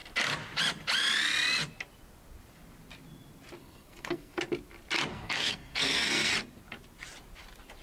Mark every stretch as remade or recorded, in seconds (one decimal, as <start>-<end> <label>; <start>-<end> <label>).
0.0-3.6 recorded; 3.6-4.4 remade; 4.4-5.1 recorded; 5.1-6.3 remade; 6.3-7.8 recorded